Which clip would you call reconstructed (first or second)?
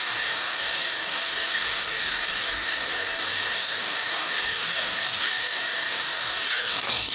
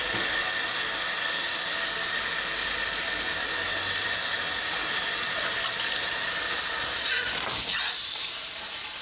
first